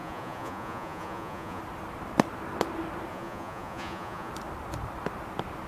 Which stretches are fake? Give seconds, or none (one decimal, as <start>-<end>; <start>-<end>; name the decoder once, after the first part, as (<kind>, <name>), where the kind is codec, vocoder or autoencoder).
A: 0.0-1.6 (vocoder, Vocos); 3.1-4.3